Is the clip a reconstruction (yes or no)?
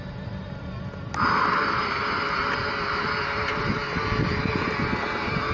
no